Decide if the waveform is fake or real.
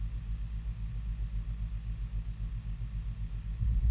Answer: real